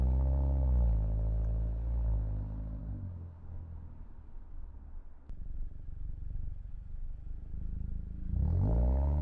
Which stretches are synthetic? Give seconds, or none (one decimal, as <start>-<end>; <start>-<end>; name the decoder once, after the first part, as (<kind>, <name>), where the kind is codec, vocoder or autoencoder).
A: 2.8-3.6 (codec, DAC)

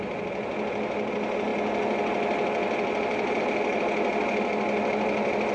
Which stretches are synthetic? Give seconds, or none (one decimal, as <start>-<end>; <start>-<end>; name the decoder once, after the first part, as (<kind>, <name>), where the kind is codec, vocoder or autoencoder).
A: none

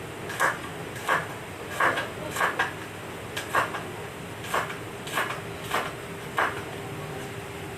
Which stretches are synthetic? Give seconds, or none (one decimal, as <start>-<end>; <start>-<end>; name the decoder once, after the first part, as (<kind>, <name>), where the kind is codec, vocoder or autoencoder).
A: none

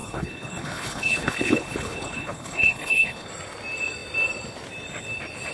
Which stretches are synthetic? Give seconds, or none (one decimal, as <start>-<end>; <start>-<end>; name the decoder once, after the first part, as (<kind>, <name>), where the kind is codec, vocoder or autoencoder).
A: 0.0-3.3 (codec, HILCodec)

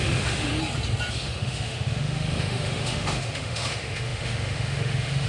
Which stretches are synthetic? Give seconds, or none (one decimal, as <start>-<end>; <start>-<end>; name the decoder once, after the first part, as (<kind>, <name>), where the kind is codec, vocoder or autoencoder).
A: 0.0-0.5 (autoencoder, DAC-VAE); 1.1-5.3